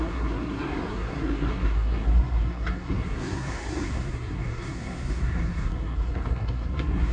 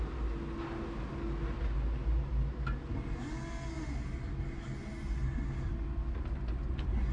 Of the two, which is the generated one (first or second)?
first